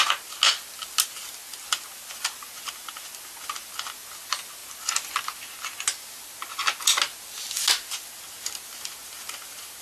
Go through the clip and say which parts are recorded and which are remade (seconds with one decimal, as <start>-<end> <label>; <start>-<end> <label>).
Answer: 0.0-9.8 recorded